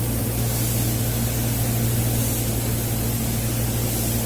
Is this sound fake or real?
real